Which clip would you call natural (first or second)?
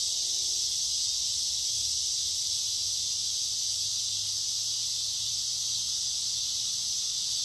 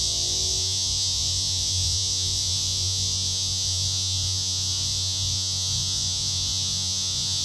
first